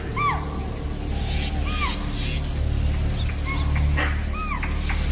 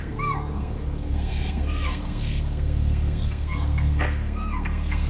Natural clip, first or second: first